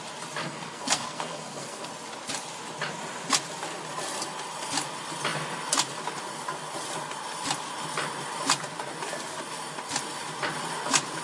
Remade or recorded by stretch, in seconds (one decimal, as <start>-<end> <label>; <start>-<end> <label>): 0.0-0.4 recorded; 0.4-1.9 remade; 1.9-11.2 recorded